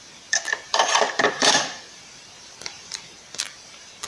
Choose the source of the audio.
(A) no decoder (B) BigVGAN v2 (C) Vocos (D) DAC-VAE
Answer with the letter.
B